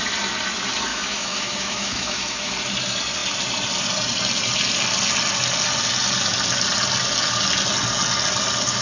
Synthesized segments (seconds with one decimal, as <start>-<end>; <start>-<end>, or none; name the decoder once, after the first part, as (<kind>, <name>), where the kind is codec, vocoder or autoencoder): 0.9-2.5 (autoencoder, DAC-VAE)